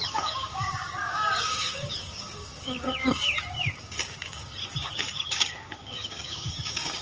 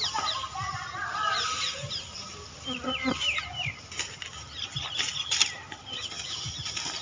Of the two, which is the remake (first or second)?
first